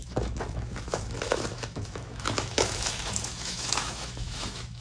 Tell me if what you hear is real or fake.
fake